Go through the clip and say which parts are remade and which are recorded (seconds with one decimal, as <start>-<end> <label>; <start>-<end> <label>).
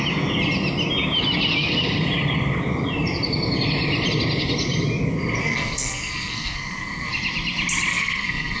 0.0-5.4 recorded; 5.4-7.1 remade; 7.1-7.9 recorded; 7.9-8.6 remade